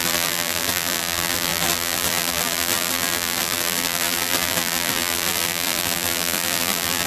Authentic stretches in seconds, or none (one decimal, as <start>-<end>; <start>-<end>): none